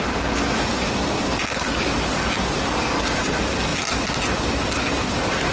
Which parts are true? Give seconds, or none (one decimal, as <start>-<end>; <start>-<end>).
0.0-5.5